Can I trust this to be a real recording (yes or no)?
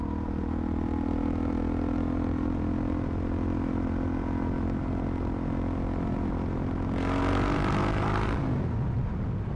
yes